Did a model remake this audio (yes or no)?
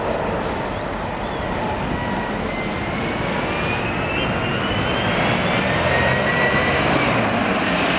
no